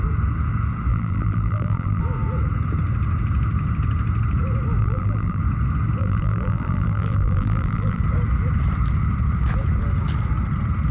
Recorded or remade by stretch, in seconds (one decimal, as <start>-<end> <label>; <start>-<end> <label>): 0.0-0.9 recorded; 0.9-2.0 remade; 2.0-4.8 recorded; 4.8-5.4 remade; 5.4-6.0 recorded; 6.0-8.0 remade; 8.0-10.9 recorded